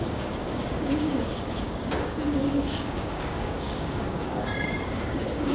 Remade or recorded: remade